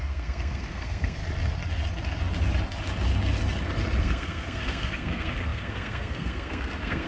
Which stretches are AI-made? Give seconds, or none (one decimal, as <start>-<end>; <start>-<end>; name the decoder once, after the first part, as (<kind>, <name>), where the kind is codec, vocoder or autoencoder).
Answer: 0.0-1.2 (codec, SNAC); 4.0-7.1